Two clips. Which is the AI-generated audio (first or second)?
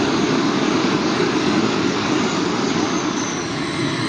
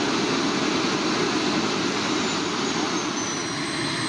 first